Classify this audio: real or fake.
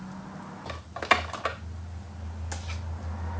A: real